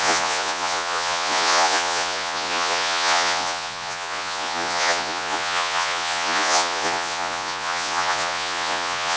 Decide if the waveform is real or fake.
fake